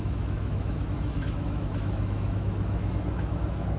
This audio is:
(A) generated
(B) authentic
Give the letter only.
A